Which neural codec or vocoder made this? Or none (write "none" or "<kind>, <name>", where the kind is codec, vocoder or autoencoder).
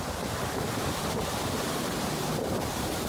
vocoder, BigVGAN v2